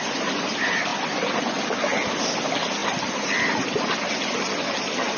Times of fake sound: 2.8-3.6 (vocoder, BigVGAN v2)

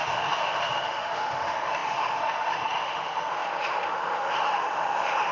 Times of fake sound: 0.0-5.3 (autoencoder, DAC-VAE)

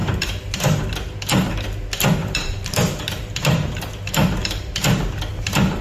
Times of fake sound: 0.0-0.8 (vocoder, BigVGAN v2); 2.2-4.5

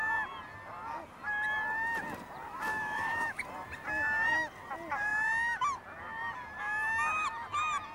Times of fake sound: 2.7-3.4 (autoencoder, DAC-VAE)

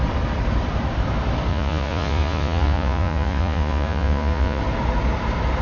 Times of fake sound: 1.5-4.6 (vocoder, Vocos)

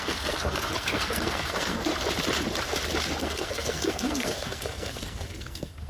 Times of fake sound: 0.0-1.9 (codec, SNAC); 3.2-5.9

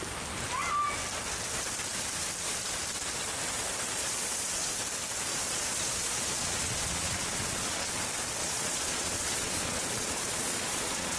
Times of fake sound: 4.0-4.7 (vocoder, Vocos); 5.3-7.9; 8.4-11.2

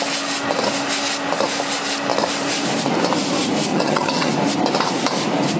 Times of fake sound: 3.7-4.3 (vocoder, HiFi-GAN)